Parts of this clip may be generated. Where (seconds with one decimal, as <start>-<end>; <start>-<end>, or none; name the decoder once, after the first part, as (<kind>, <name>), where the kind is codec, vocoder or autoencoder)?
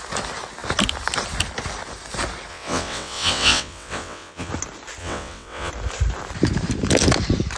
2.5-4.5 (vocoder, WaveNeXt); 5.0-5.7